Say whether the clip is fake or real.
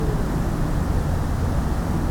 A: real